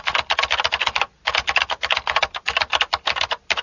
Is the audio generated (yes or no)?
no